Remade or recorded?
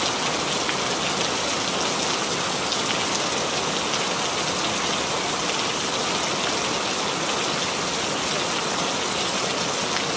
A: recorded